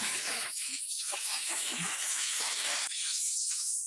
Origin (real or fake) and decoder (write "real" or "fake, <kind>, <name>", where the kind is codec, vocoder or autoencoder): fake, autoencoder, DAC-VAE